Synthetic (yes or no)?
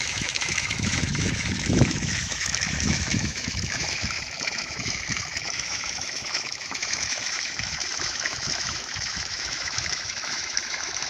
yes